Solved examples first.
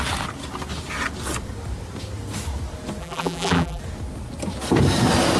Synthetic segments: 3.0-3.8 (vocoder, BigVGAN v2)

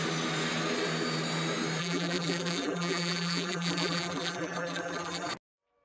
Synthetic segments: 1.8-5.3 (vocoder, BigVGAN v2)

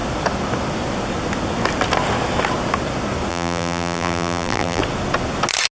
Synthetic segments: 3.3-4.8 (vocoder, BigVGAN v2)

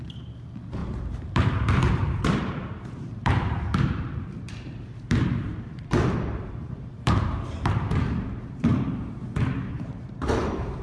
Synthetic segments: 0.0-8.7 (vocoder, BigVGAN v2); 9.7-10.8